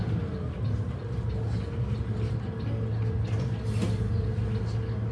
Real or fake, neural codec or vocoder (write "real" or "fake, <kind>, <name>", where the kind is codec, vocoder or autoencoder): real